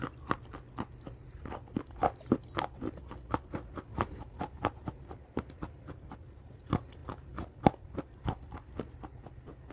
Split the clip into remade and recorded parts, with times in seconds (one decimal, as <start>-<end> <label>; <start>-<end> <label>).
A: 0.0-4.8 recorded; 4.8-6.5 remade; 6.5-9.7 recorded